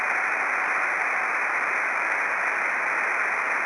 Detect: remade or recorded recorded